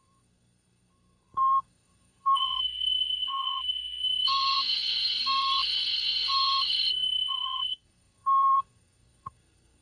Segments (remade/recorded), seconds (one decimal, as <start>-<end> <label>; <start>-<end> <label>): 0.0-9.8 remade